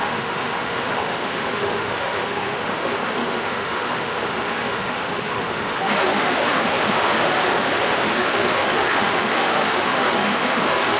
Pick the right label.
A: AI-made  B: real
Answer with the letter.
A